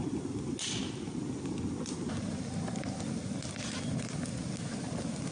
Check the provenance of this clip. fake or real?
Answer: real